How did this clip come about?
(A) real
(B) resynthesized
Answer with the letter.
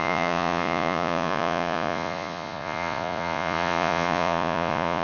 B